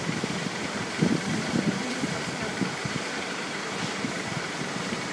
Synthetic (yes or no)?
yes